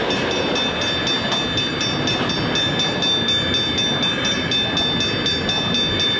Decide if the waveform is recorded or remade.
recorded